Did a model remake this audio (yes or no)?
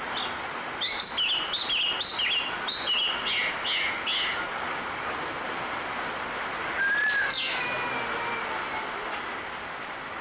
no